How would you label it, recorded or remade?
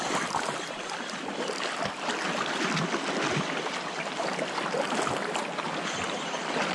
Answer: recorded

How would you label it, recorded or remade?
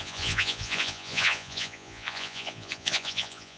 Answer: remade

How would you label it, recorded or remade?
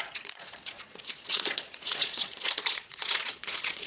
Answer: remade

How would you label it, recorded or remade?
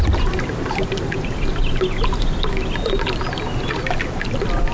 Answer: recorded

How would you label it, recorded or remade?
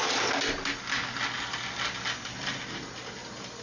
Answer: recorded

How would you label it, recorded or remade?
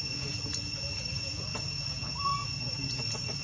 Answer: remade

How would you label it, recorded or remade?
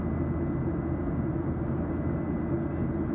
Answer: recorded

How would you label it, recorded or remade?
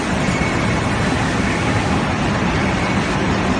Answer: recorded